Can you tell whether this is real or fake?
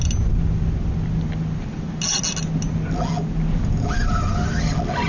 real